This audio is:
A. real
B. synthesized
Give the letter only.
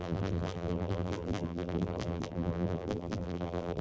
B